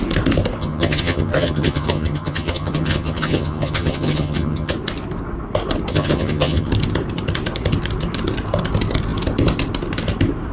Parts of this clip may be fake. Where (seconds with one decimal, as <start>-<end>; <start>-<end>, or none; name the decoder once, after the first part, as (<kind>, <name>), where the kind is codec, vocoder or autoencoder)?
0.6-4.7 (vocoder, HiFi-GAN); 5.9-6.7